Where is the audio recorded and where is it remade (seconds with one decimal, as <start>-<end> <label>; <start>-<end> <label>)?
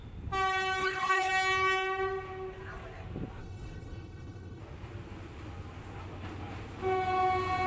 0.0-0.8 recorded; 0.8-1.3 remade; 1.3-3.4 recorded; 3.4-4.6 remade; 4.6-7.7 recorded